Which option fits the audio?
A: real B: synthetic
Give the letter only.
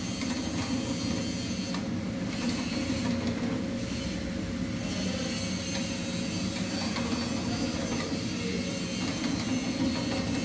A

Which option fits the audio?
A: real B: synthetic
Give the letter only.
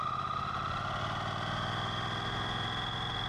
A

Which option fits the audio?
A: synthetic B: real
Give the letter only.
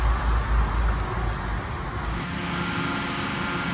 B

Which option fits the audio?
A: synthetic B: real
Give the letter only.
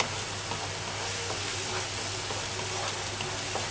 B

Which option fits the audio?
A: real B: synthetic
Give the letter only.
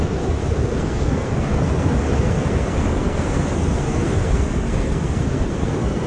B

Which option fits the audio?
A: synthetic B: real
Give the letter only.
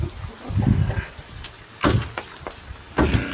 B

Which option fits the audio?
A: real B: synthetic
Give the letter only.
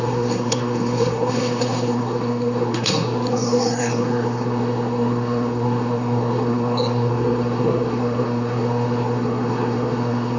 B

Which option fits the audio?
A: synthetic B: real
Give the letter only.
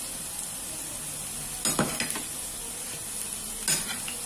B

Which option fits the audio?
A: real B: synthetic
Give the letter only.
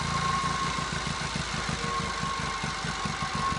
A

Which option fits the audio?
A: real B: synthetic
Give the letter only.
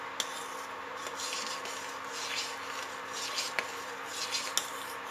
A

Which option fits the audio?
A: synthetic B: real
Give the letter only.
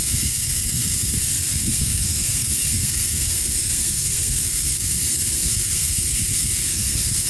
A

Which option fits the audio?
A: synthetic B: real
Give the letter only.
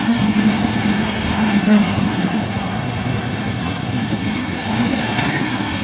A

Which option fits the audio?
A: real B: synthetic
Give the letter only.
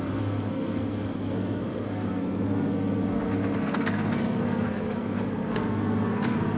B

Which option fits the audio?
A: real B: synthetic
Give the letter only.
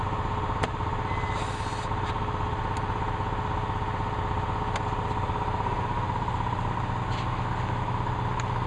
A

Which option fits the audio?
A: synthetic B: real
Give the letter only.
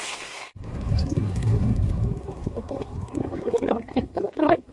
A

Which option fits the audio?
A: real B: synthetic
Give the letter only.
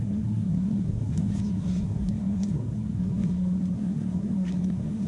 B